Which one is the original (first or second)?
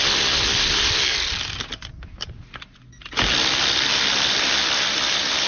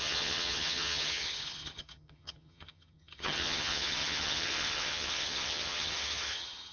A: first